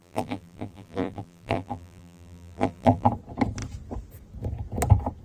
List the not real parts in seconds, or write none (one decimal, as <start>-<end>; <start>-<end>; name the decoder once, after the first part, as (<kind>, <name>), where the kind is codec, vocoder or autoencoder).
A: 0.0-3.1 (vocoder, BigVGAN v2)